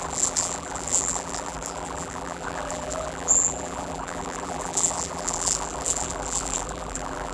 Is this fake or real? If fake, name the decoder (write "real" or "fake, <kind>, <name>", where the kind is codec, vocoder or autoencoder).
fake, vocoder, BigVGAN v2